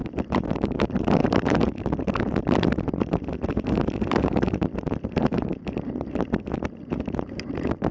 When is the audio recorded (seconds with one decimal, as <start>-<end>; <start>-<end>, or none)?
none